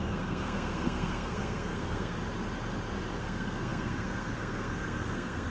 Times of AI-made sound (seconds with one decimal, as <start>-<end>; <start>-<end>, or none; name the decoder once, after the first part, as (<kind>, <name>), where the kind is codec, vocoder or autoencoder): 0.0-2.2 (codec, SNAC); 3.2-5.5